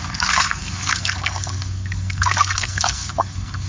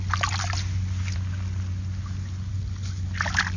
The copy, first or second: first